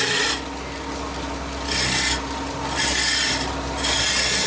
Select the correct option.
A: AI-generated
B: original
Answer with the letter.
B